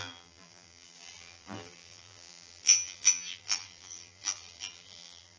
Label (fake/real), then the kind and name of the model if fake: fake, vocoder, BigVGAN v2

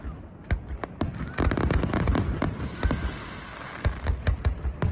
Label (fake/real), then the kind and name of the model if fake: real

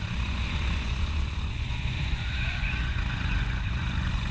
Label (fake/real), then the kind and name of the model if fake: fake, vocoder, Vocos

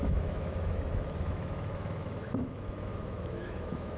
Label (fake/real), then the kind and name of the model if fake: fake, autoencoder, DAC-VAE